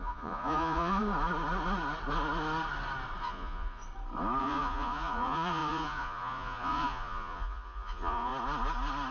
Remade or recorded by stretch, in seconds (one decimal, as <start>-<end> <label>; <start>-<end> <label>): 0.0-1.0 remade; 1.0-3.2 recorded; 3.2-3.8 remade; 3.8-4.4 recorded; 4.4-8.3 remade; 8.3-9.1 recorded